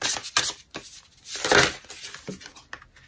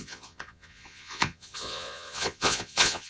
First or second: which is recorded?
first